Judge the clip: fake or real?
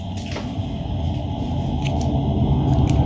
real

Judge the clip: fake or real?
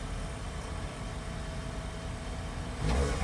real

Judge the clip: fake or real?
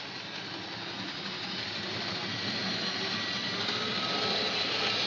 real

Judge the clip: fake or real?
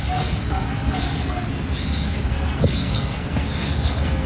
fake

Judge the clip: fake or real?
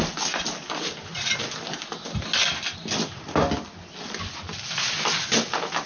real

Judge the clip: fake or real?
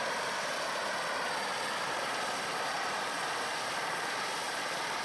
real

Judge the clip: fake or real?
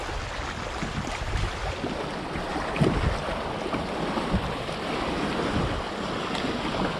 real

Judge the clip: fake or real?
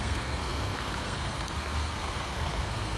fake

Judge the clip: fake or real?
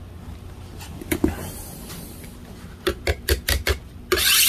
real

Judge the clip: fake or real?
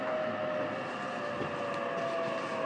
real